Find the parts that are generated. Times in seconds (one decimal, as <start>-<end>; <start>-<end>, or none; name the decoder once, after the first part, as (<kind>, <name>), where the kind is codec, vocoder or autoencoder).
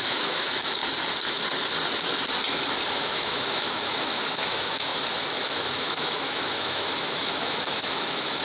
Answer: 0.0-0.8 (autoencoder, DAC-VAE); 2.9-8.4